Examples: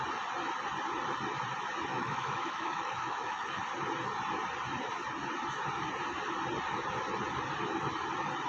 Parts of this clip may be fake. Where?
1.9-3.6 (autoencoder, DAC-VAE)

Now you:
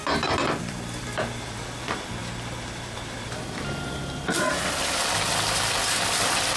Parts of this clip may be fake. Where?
0.6-2.2 (vocoder, BigVGAN v2); 3.2-4.5; 5.3-6.6

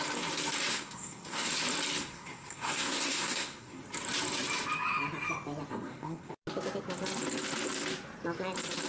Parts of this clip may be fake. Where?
0.7-1.5 (codec, SNAC); 2.0-3.8; 5.7-6.3

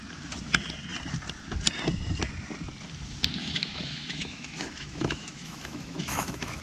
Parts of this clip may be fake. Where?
3.4-6.6 (autoencoder, DAC-VAE)

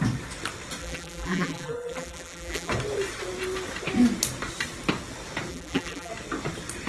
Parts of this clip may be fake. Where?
0.8-2.7 (vocoder, BigVGAN v2); 5.5-6.1

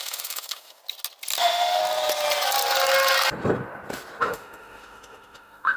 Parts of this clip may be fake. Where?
0.0-0.8 (autoencoder, DAC-VAE); 1.4-1.8; 4.2-5.8

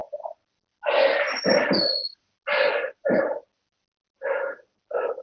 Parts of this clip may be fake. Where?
none